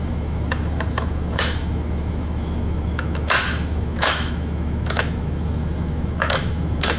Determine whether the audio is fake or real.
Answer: fake